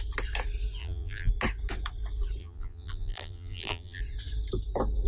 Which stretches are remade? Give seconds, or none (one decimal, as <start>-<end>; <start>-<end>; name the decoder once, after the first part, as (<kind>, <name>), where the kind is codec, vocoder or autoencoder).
0.8-1.3 (vocoder, BigVGAN v2); 2.4-4.0